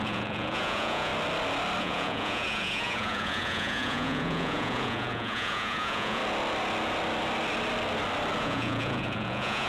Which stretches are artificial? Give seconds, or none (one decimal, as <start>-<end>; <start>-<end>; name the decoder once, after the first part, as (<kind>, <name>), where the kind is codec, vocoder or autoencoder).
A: 0.0-1.1 (vocoder, Vocos); 1.8-6.2; 8.4-9.7